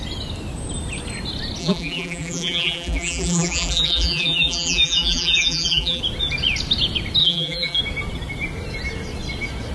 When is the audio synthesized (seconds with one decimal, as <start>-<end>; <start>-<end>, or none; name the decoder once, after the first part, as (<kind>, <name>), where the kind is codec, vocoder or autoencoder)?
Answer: 1.6-6.0 (vocoder, BigVGAN v2); 7.2-7.8